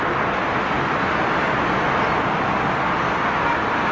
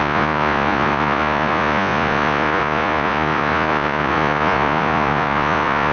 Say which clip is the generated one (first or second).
second